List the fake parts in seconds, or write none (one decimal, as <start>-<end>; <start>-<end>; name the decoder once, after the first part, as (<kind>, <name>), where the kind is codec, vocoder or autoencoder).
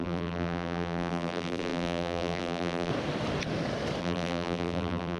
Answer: 0.0-2.9 (vocoder, BigVGAN v2); 4.0-5.2